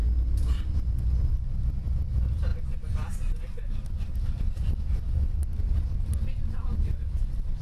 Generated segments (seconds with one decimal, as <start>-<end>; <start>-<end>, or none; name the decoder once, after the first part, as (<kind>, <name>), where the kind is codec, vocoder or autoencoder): none